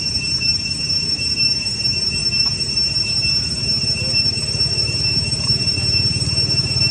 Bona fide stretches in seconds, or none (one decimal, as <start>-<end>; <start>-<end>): none